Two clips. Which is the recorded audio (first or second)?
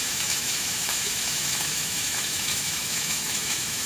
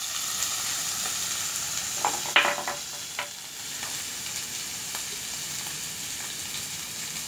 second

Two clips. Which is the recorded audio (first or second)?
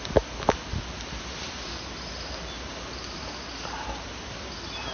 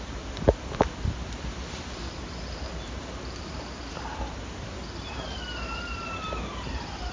first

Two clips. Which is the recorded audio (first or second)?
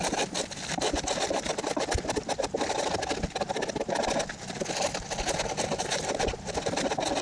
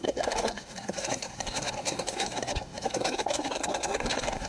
first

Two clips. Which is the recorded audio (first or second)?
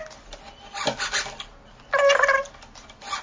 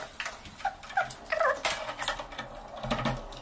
first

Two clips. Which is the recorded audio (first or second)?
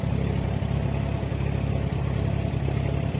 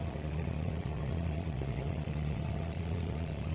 first